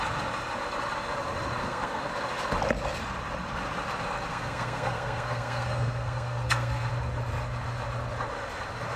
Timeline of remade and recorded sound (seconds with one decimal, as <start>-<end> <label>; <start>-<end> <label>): 0.0-1.6 recorded; 1.6-2.1 remade; 2.1-4.3 recorded; 4.3-6.9 remade; 6.9-9.0 recorded